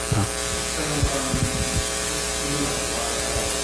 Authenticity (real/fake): real